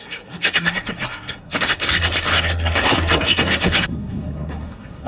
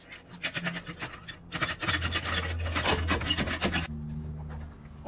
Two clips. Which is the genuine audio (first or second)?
second